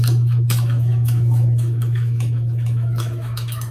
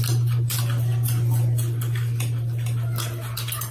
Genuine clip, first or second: second